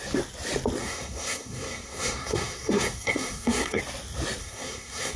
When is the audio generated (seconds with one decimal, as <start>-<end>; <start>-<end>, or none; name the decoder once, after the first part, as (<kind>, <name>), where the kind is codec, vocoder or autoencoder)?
0.8-3.8 (codec, SNAC); 4.4-5.2